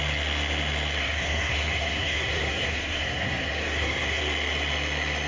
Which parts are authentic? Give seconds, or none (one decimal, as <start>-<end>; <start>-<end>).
0.0-1.0; 4.2-5.3